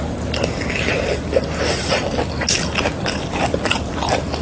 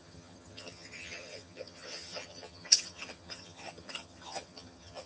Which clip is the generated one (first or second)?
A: second